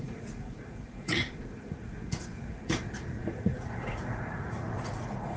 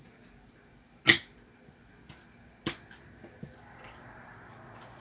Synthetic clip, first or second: first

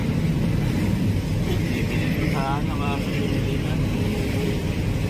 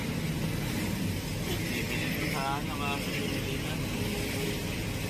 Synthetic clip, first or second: first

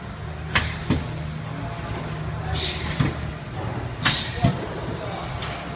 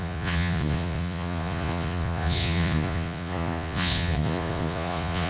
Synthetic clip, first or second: second